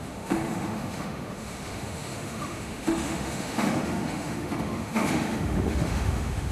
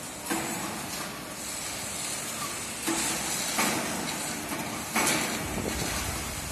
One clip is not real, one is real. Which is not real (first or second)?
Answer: first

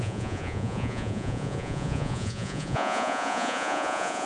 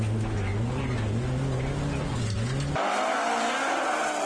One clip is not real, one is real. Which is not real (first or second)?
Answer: first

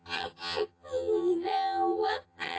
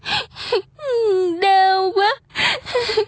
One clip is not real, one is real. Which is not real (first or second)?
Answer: first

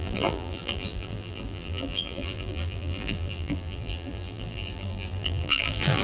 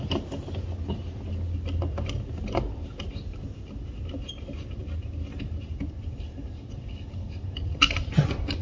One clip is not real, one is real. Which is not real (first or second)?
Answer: first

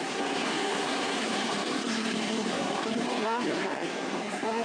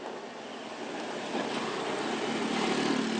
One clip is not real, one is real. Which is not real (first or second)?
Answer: first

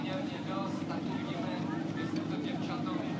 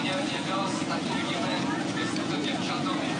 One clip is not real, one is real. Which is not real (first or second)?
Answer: second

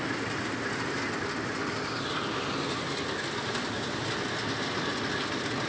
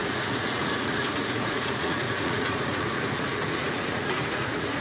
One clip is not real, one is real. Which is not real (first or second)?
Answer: second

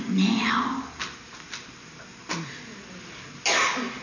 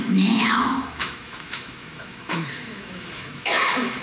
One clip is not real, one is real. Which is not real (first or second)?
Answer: second